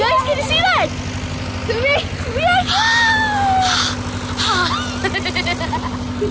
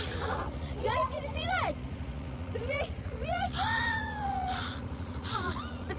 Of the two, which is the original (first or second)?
first